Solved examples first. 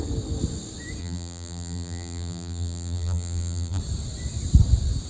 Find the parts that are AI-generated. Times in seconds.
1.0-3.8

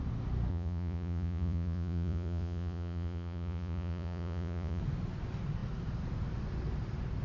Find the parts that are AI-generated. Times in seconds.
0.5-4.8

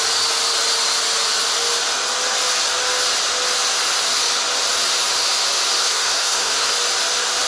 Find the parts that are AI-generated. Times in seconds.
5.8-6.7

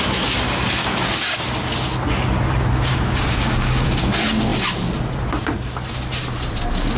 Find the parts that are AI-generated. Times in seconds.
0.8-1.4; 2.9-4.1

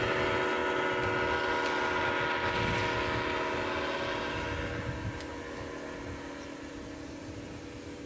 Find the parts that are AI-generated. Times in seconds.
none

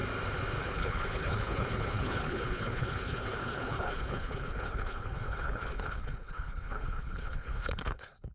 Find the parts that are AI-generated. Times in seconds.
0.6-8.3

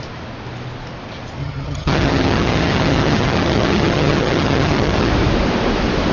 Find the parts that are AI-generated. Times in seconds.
1.4-5.1

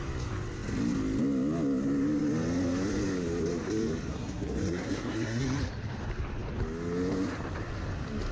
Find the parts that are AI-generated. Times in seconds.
4.1-5.4